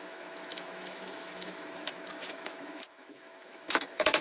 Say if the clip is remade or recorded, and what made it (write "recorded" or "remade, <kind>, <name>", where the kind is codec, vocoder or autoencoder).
remade, autoencoder, DAC-VAE